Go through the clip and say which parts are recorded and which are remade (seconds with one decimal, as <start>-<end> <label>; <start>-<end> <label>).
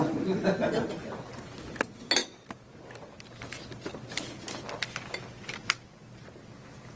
0.0-7.0 recorded